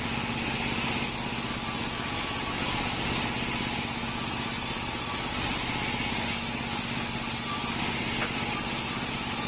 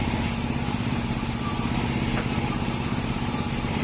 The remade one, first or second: second